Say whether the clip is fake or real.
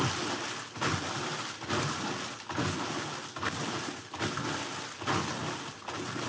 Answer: real